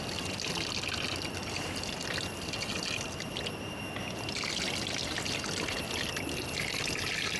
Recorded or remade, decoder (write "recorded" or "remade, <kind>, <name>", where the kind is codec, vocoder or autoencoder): recorded